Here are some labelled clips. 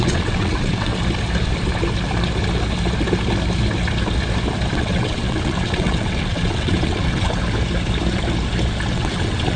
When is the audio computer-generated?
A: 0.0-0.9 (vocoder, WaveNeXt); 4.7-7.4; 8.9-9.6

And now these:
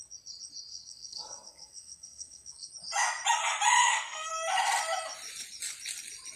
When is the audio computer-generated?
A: 0.7-2.7 (codec, SNAC); 3.8-4.3

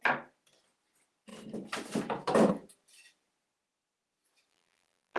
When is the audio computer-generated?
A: 4.5-5.2 (vocoder, BigVGAN v2)

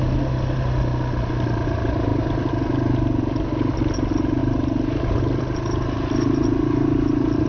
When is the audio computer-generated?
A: 2.1-2.6 (vocoder, BigVGAN v2)

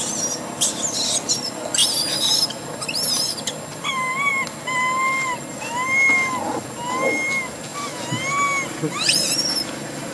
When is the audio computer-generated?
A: none

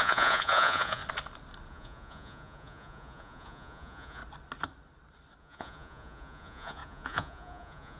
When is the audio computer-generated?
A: 0.0-1.0 (vocoder, Vocos); 1.7-4.2; 5.4-8.0